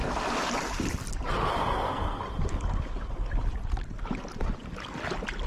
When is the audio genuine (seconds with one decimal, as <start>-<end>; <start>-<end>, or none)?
0.0-1.6; 2.2-5.5